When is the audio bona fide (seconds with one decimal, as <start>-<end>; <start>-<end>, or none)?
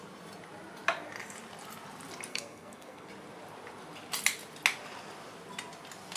0.0-2.3; 3.1-6.2